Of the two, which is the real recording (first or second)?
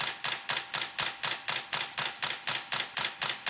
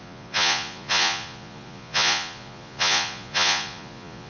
first